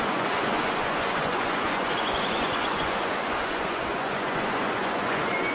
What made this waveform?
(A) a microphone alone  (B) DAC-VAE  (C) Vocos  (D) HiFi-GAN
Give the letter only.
C